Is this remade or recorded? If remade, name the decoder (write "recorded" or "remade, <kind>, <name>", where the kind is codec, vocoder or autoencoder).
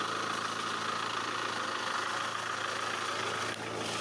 recorded